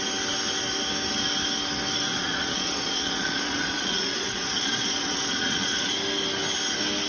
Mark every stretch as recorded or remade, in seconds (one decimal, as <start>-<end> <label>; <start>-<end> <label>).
0.0-2.1 recorded; 2.1-5.9 remade; 5.9-7.1 recorded